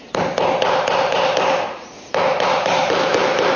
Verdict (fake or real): fake